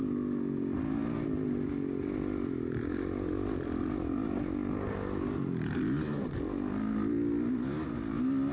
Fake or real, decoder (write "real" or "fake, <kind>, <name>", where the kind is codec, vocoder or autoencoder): real